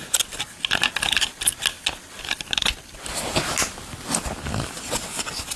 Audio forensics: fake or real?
real